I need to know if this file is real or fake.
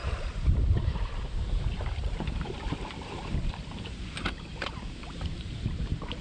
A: fake